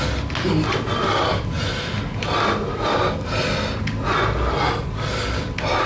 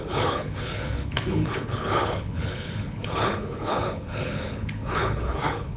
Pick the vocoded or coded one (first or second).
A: second